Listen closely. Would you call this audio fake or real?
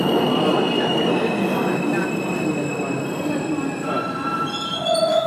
real